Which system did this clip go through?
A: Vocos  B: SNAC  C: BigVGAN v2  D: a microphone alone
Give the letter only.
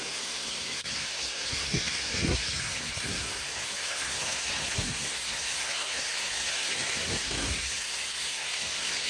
B